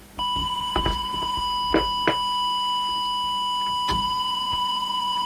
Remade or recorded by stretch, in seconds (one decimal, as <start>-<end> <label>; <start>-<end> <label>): 0.0-0.4 recorded; 0.4-1.4 remade; 1.4-3.9 recorded; 3.9-5.3 remade